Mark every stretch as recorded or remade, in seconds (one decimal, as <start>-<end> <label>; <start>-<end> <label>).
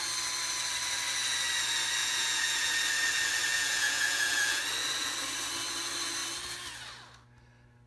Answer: 0.0-2.0 recorded; 2.0-2.7 remade; 2.7-3.5 recorded; 3.5-4.6 remade; 4.6-7.9 recorded